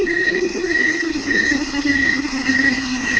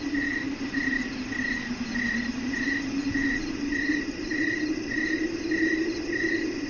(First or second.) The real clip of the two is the second